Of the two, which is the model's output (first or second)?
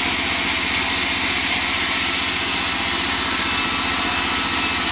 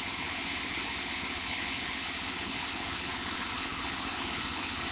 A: second